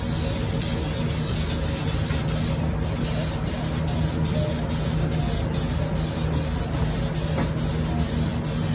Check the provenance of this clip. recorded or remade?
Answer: recorded